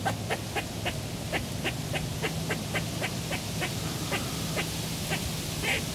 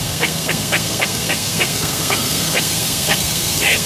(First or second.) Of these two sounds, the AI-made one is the second